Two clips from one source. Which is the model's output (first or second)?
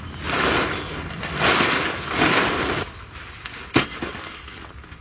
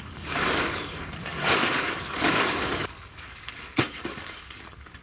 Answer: second